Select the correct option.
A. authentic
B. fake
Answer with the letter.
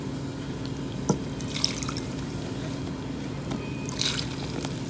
B